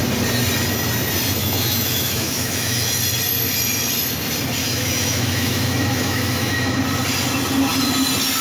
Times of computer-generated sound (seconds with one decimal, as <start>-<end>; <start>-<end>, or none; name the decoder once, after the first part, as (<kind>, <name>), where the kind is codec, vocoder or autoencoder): 1.4-2.9 (autoencoder, DAC-VAE); 4.6-6.8